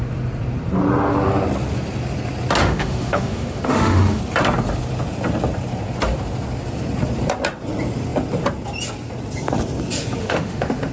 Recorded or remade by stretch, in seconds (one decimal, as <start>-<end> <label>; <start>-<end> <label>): 0.0-2.6 recorded; 2.6-4.2 remade; 4.2-10.2 recorded; 10.2-10.9 remade

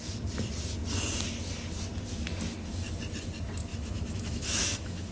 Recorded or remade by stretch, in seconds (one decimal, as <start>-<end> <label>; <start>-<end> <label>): 0.0-3.7 recorded; 3.7-5.1 remade

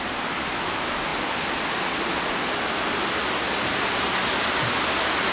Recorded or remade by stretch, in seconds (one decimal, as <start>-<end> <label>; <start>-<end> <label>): 0.0-5.3 recorded

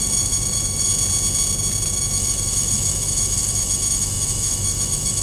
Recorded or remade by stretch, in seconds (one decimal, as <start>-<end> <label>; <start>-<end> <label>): 0.0-0.9 remade; 0.9-1.9 recorded; 1.9-5.2 remade

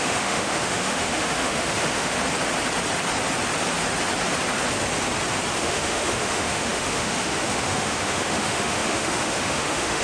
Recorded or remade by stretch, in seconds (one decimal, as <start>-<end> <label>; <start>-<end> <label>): 0.0-2.2 remade; 2.2-5.6 recorded; 5.6-10.0 remade

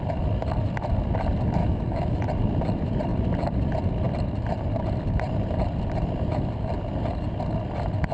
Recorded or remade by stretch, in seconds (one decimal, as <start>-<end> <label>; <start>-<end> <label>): 0.0-1.6 recorded; 1.6-2.2 remade; 2.2-8.1 recorded

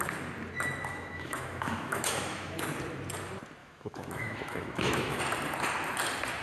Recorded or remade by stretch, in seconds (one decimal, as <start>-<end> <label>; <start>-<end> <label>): 0.0-0.9 recorded; 0.9-2.6 remade; 2.6-3.6 recorded; 3.6-5.2 remade; 5.2-6.4 recorded